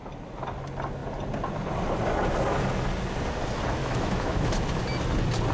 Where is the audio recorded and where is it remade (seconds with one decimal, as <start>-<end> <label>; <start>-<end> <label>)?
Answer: 0.0-3.8 recorded; 3.8-4.6 remade; 4.6-5.5 recorded